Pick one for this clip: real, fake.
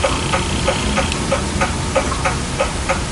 real